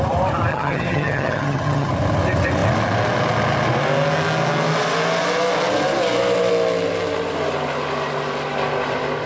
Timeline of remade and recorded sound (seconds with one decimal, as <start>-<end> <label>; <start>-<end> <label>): 0.0-0.5 recorded; 0.5-1.9 remade; 1.9-9.3 recorded